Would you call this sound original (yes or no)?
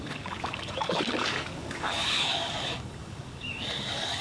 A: no